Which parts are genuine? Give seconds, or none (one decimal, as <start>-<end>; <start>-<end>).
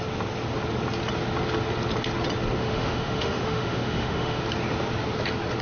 0.0-2.6; 4.4-5.6